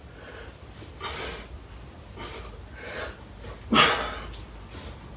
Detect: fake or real real